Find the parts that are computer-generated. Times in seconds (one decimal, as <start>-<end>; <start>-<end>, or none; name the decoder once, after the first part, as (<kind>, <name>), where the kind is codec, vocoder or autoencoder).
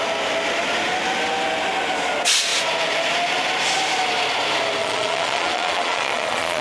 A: 4.8-6.6 (vocoder, Vocos)